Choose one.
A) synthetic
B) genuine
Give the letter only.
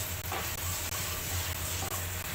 B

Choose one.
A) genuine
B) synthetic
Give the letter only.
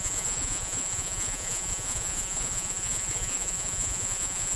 B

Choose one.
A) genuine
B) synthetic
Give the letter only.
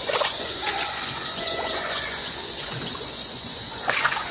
B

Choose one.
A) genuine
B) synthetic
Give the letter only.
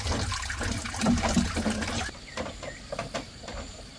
A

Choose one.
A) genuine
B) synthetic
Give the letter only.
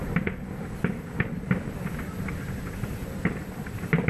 A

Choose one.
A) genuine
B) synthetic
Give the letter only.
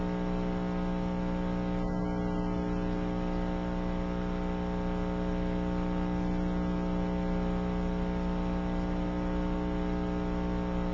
A